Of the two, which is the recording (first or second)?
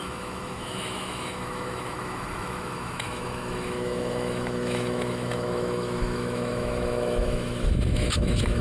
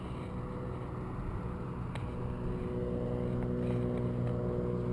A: second